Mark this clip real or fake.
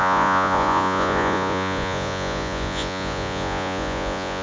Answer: fake